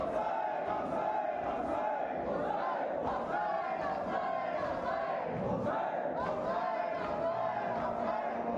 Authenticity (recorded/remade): recorded